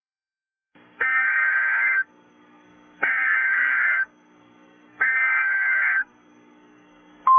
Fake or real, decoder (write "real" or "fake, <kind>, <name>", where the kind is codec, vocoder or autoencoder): fake, codec, SNAC